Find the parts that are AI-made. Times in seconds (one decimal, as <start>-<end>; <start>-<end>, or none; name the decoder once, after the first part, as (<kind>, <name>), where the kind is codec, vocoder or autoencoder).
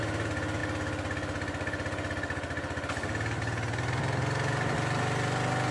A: none